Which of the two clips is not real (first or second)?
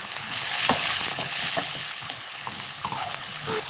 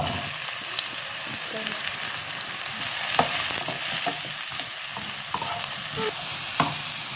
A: first